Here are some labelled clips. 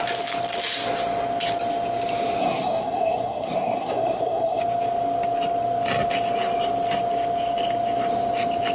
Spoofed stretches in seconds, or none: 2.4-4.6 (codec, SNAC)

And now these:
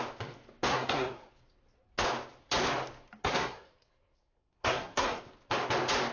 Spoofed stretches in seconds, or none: 0.7-1.3 (codec, SNAC); 3.2-5.2

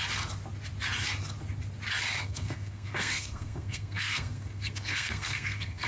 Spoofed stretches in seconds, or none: 2.2-5.9 (codec, SNAC)

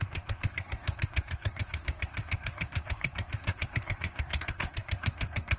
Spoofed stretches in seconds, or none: 0.0-5.6 (codec, SNAC)

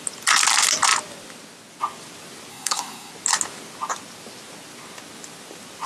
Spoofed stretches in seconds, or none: 2.5-3.1 (codec, SNAC)

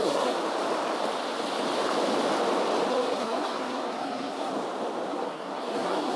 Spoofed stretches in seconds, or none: 0.0-0.4 (codec, SNAC); 2.9-4.5; 5.1-6.2